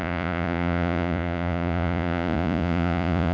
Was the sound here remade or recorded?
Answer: remade